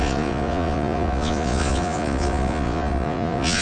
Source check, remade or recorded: remade